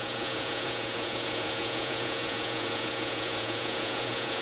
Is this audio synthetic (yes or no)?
yes